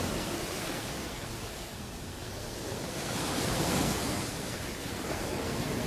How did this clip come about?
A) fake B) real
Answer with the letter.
A